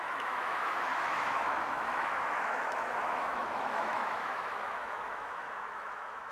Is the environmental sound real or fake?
fake